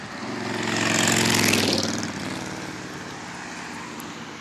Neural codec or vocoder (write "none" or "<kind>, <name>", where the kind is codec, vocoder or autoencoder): none